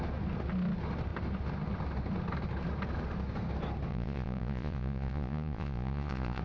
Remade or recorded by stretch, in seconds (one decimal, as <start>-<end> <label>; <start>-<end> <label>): 0.0-3.9 recorded; 3.9-6.4 remade